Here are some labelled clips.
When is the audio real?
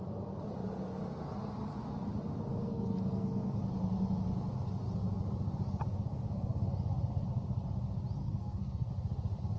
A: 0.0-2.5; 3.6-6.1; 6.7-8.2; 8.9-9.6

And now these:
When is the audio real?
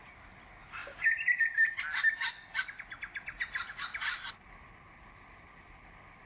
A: 0.0-6.3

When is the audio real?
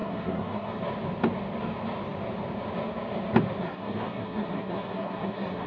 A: 0.8-3.6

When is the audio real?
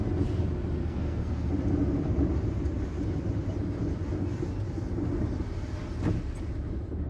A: 0.0-0.8; 1.5-7.1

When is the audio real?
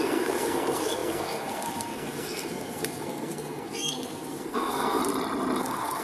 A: 5.0-5.6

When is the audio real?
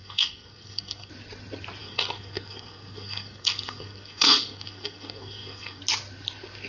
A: 1.1-1.8; 5.8-6.7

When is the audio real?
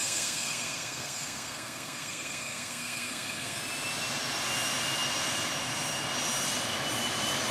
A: 3.6-7.5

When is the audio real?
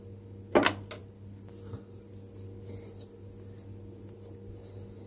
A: 0.0-5.1